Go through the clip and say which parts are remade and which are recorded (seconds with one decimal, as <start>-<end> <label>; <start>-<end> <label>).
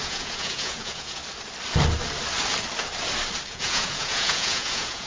0.0-1.2 remade; 1.2-3.5 recorded; 3.5-5.1 remade